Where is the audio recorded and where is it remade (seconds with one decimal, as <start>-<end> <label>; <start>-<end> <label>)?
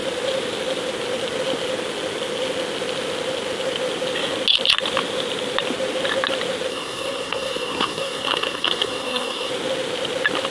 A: 0.0-6.7 recorded; 6.7-9.5 remade; 9.5-10.5 recorded